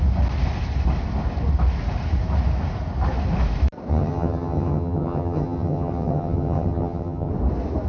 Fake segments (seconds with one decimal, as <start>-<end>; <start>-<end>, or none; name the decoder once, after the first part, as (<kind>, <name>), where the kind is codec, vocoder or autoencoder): 3.9-7.3 (vocoder, HiFi-GAN)